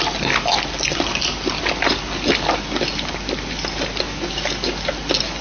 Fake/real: real